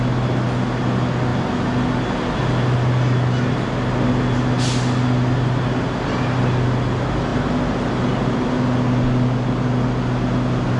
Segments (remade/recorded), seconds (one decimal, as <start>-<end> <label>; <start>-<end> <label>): 0.0-10.8 recorded